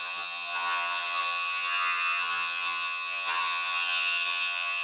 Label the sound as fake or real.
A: fake